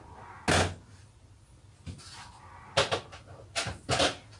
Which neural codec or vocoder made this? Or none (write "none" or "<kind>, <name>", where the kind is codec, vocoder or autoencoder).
none